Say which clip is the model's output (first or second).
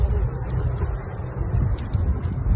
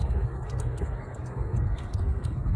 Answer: second